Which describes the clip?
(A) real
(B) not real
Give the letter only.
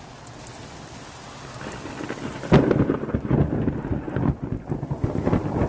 A